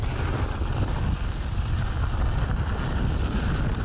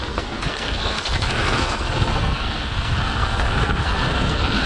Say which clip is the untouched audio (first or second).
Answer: first